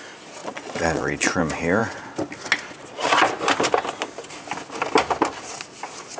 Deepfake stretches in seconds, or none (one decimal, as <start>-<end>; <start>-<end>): 0.4-1.4